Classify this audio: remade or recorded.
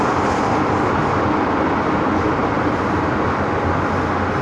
recorded